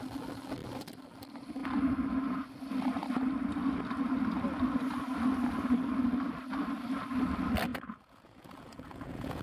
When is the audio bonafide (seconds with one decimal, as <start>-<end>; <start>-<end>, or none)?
0.0-7.7